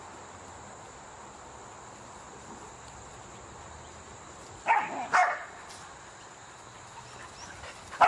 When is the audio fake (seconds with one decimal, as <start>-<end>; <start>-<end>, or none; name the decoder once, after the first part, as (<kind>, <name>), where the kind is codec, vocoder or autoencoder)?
none